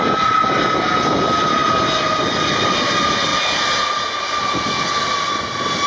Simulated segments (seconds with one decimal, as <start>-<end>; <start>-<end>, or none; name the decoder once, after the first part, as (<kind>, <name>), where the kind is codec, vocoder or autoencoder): none